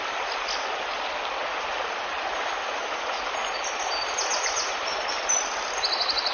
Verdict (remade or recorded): recorded